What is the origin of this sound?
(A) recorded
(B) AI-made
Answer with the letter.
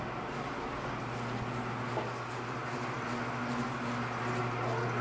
A